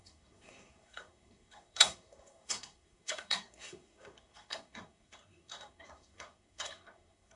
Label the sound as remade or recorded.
remade